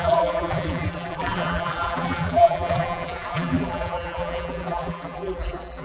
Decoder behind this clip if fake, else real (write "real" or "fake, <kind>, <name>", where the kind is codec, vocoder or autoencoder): fake, vocoder, BigVGAN v2